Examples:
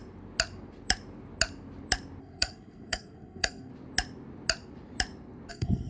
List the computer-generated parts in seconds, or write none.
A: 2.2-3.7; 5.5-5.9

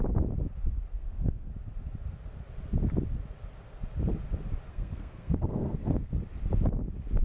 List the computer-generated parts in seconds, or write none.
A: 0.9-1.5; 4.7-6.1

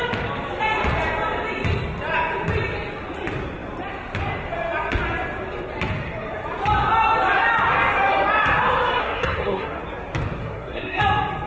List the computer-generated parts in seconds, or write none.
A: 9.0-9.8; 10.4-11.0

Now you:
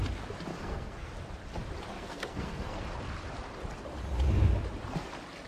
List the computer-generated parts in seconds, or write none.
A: 0.5-1.1; 1.9-2.8